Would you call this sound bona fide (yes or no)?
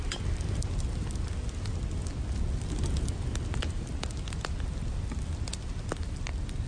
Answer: yes